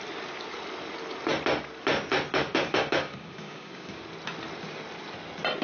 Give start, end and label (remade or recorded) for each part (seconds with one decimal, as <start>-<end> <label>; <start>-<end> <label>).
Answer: 0.0-2.5 recorded; 2.5-4.0 remade; 4.0-5.6 recorded

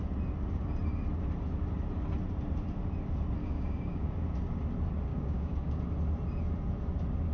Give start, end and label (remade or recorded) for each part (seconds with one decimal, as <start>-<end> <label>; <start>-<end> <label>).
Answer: 0.0-3.4 recorded; 3.4-4.2 remade; 4.2-5.1 recorded; 5.1-5.8 remade; 5.8-7.3 recorded